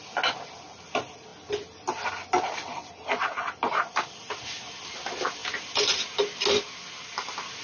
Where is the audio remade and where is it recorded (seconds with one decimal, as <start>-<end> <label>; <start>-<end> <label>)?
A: 0.0-7.6 recorded